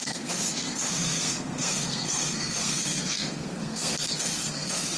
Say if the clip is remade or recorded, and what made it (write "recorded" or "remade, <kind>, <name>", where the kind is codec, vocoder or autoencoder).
remade, codec, SNAC